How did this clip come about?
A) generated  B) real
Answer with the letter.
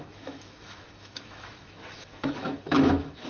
A